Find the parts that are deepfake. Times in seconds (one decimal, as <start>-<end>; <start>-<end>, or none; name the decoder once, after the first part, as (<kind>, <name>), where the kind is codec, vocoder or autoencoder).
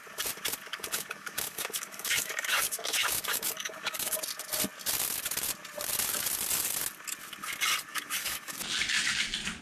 0.7-4.2 (codec, DAC); 7.9-8.6